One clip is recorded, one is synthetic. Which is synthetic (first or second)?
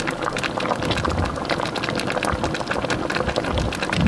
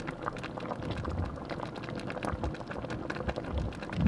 first